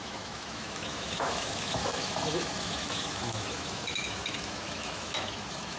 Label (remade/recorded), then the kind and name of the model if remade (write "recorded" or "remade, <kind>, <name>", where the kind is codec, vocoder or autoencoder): remade, autoencoder, DAC-VAE